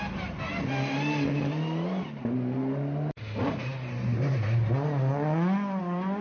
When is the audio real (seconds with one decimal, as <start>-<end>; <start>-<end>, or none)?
0.0-6.2